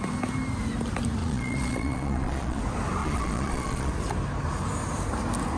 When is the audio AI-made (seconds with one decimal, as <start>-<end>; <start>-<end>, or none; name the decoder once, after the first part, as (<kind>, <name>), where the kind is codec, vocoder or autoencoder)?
1.2-2.6 (vocoder, Vocos); 3.0-3.9

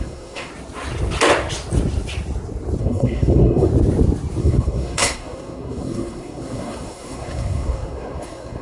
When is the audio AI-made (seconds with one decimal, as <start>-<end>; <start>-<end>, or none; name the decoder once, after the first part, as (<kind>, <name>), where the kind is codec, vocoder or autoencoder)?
0.0-0.5 (codec, SNAC); 2.8-3.7; 4.4-8.6

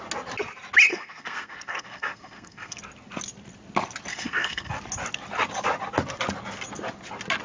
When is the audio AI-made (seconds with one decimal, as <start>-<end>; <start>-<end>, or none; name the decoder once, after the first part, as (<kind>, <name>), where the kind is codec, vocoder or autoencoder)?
0.9-2.8 (codec, SNAC); 4.1-4.7